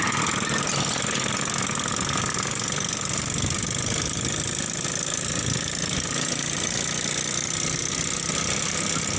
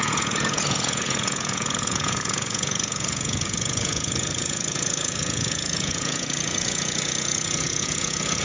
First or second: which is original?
first